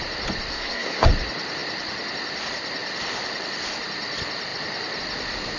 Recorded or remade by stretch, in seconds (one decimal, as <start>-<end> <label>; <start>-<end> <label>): 0.0-0.5 recorded; 0.5-1.1 remade; 1.1-5.6 recorded

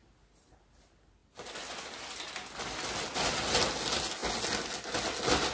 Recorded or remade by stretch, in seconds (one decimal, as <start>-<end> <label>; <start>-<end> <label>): 0.0-5.5 recorded

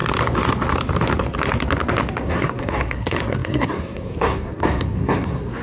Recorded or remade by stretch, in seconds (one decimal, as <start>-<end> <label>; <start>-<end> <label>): 0.0-2.2 recorded; 2.2-5.6 remade

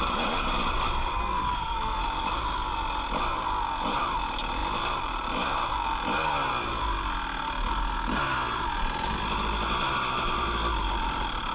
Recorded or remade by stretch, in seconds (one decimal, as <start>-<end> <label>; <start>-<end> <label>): 0.0-1.1 recorded; 1.1-2.0 remade; 2.0-11.5 recorded

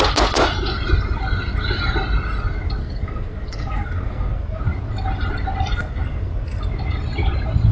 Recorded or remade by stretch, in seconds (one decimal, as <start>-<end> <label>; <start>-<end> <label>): 0.0-2.8 recorded; 2.8-4.6 remade; 4.6-5.8 recorded; 5.8-6.6 remade; 6.6-7.7 recorded